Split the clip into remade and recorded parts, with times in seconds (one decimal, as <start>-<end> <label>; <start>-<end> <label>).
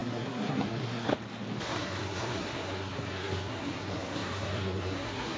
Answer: 0.0-1.1 remade; 1.1-1.6 recorded; 1.6-5.4 remade